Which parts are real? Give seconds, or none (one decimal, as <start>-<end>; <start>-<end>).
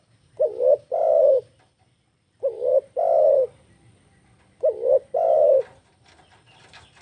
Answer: 0.0-7.0